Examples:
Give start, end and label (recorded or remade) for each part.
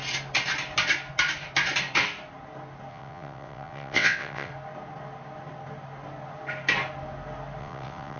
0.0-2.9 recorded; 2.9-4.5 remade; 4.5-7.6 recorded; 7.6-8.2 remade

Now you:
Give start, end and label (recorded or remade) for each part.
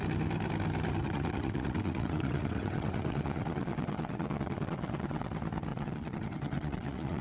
0.0-1.0 recorded; 1.0-5.3 remade; 5.3-5.7 recorded; 5.7-7.2 remade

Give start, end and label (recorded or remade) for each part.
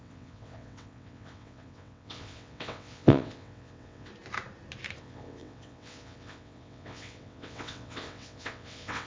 0.0-4.1 remade; 4.1-5.0 recorded; 5.0-9.1 remade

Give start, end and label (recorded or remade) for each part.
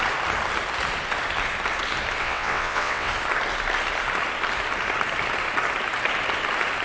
0.0-2.2 recorded; 2.2-3.1 remade; 3.1-6.8 recorded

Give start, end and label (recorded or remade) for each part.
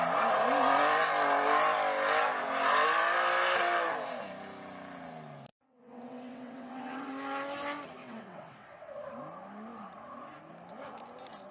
0.0-5.5 recorded; 5.5-7.1 remade; 7.1-8.0 recorded; 8.0-8.9 remade; 8.9-11.5 recorded